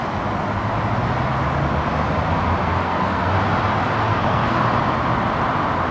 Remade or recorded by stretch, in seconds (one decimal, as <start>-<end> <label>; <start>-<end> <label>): 0.0-2.6 recorded; 2.6-3.3 remade; 3.3-4.1 recorded; 4.1-4.6 remade; 4.6-5.9 recorded